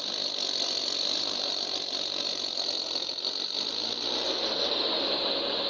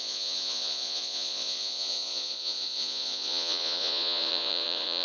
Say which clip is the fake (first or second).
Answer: second